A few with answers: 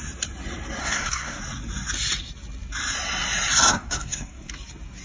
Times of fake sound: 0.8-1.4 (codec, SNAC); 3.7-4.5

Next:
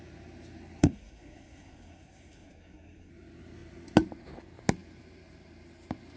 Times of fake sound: 0.8-3.1 (codec, SNAC)